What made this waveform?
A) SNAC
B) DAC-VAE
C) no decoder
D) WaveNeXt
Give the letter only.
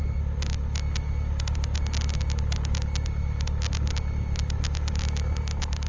C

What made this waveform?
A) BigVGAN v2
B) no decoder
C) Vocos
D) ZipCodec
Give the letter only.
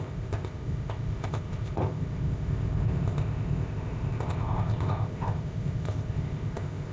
D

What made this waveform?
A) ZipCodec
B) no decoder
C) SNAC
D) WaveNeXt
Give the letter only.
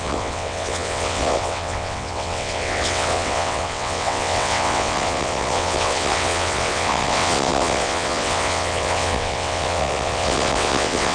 D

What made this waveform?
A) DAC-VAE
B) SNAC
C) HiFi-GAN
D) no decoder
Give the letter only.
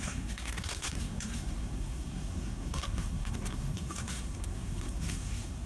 B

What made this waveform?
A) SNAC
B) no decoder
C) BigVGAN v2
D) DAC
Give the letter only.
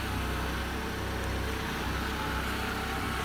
B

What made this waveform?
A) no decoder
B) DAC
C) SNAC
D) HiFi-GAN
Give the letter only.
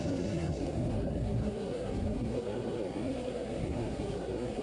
C